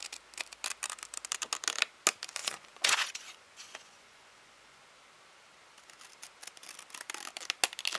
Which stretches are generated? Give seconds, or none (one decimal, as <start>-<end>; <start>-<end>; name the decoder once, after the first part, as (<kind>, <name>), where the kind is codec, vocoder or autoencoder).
2.4-4.8 (vocoder, Vocos)